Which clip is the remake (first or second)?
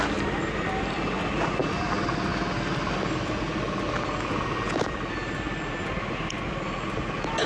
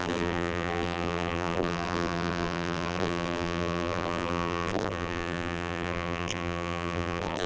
second